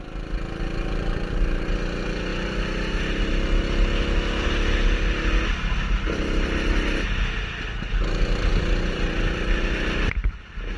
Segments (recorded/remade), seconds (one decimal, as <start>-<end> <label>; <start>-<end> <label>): 0.0-10.8 recorded